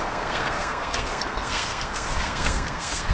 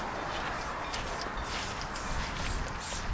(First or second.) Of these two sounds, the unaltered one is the second